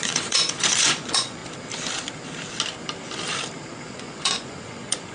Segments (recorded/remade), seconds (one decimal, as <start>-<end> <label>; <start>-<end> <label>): 0.0-1.4 remade; 1.4-3.7 recorded; 3.7-5.1 remade